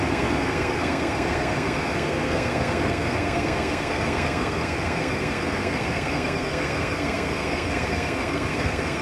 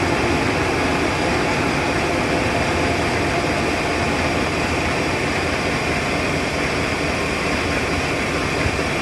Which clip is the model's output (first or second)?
first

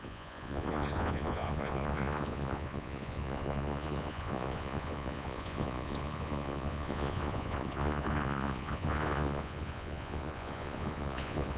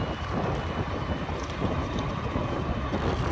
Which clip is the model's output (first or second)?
first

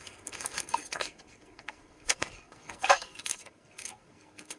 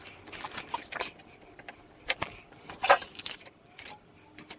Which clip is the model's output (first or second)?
first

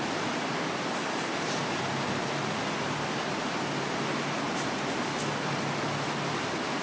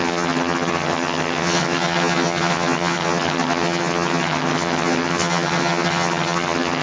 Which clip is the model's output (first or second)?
second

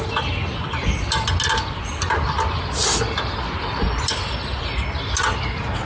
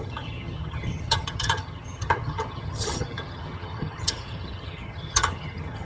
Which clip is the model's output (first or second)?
second